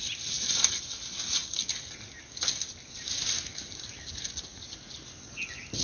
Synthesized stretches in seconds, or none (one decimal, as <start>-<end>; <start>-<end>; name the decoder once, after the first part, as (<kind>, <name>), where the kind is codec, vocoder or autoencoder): none